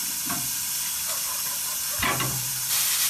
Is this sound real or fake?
fake